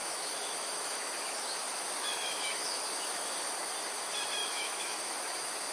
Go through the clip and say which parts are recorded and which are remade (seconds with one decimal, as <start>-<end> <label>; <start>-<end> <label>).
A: 0.0-3.4 remade; 3.4-4.4 recorded; 4.4-5.7 remade

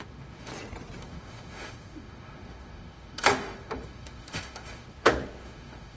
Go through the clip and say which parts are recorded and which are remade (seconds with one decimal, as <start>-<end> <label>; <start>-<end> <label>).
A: 0.0-0.5 remade; 0.5-1.0 recorded; 1.0-6.0 remade

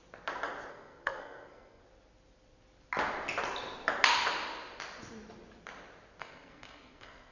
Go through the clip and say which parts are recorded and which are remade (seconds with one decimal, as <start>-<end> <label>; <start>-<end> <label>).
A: 0.0-0.7 recorded; 0.7-1.8 remade; 1.8-6.2 recorded; 6.2-7.3 remade

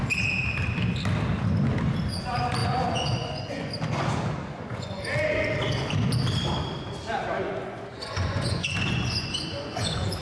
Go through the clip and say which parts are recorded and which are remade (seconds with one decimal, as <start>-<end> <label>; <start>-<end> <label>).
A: 0.0-2.6 recorded; 2.6-3.7 remade; 3.7-4.4 recorded; 4.4-5.0 remade; 5.0-7.4 recorded; 7.4-10.2 remade

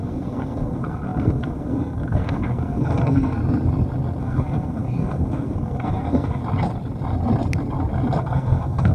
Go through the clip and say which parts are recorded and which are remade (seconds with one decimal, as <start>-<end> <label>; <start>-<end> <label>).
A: 0.0-3.4 remade; 3.4-4.2 recorded; 4.2-6.4 remade; 6.4-8.2 recorded; 8.2-8.9 remade

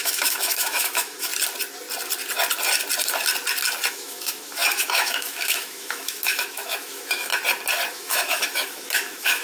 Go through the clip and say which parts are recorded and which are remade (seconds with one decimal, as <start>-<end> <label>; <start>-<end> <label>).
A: 0.0-1.3 remade; 1.3-3.9 recorded; 3.9-7.3 remade; 7.3-7.9 recorded; 7.9-9.4 remade

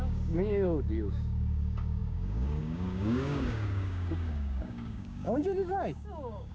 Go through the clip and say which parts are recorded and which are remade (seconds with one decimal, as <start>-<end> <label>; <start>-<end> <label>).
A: 0.0-6.5 remade